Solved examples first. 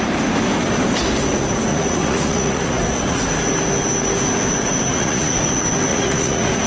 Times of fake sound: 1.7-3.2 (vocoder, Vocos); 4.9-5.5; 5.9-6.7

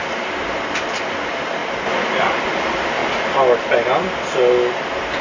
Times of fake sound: 0.0-1.6 (vocoder, BigVGAN v2); 2.5-3.0; 4.5-5.2

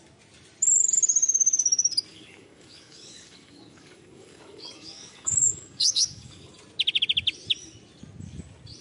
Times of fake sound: 2.1-6.5 (codec, DAC)

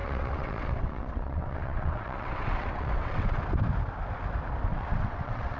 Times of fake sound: 0.0-3.4 (vocoder, WaveNeXt); 4.7-5.6

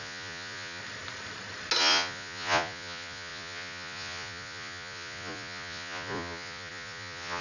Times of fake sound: 0.0-0.8 (vocoder, Vocos); 1.8-7.4

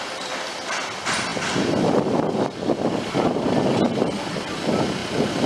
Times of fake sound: none